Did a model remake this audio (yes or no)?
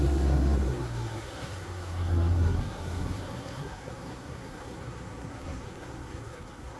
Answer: yes